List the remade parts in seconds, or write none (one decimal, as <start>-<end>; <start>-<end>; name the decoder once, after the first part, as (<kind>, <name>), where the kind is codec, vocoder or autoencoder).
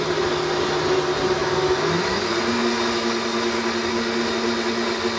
1.4-2.2 (autoencoder, DAC-VAE)